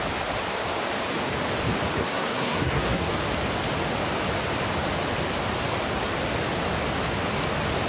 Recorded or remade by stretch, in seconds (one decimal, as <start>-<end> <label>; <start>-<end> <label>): 0.0-2.0 recorded; 2.0-3.1 remade; 3.1-7.9 recorded